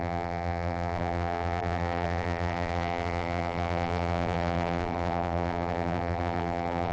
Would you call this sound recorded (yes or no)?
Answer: no